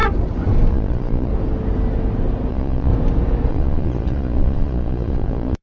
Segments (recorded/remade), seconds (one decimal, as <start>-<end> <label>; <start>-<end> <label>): 0.0-0.7 recorded; 0.7-1.3 remade; 1.3-2.5 recorded; 2.5-2.9 remade; 2.9-3.5 recorded; 3.5-5.6 remade